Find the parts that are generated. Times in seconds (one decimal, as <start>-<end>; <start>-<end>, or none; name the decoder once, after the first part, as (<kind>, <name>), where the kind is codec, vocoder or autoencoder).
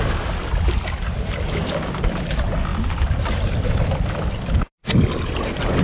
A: none